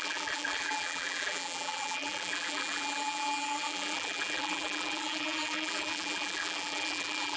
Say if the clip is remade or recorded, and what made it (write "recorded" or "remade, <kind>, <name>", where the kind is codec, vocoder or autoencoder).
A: remade, vocoder, BigVGAN v2